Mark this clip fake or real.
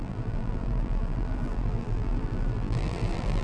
fake